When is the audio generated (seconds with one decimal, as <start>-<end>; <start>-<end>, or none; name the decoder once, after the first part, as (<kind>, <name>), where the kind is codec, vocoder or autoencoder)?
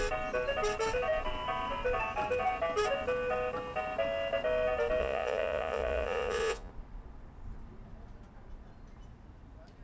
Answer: 5.0-6.7 (vocoder, Vocos)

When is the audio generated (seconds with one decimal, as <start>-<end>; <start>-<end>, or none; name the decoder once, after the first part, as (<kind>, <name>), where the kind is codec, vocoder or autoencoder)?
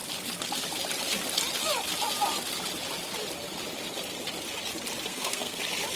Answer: 5.1-5.6 (codec, SNAC)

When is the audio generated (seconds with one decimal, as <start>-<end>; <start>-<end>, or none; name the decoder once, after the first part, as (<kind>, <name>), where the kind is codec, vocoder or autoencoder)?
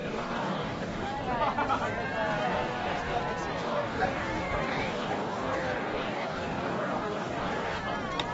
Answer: 0.0-1.1 (codec, DAC); 2.4-3.2; 3.6-7.8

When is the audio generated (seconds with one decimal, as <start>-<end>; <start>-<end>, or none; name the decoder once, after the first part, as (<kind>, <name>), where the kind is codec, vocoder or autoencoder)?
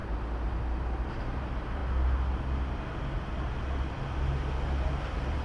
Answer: 1.2-1.8 (vocoder, BigVGAN v2); 5.0-5.4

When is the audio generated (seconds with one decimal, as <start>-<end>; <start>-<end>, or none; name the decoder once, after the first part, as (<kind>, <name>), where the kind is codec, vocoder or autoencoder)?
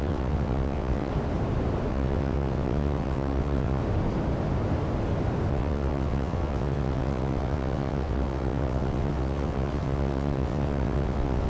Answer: 0.0-1.1 (vocoder, WaveNeXt); 1.9-3.8; 5.5-11.5